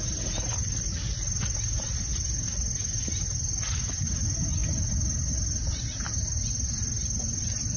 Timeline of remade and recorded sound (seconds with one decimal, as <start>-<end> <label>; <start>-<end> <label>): 0.0-7.8 recorded